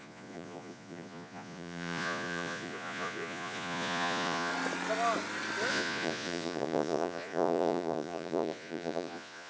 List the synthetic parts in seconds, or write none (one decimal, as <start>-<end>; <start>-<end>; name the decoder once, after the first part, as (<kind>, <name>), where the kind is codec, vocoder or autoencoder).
0.0-4.5 (vocoder, Vocos); 5.7-9.5